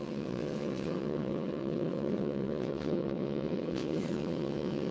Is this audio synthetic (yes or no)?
yes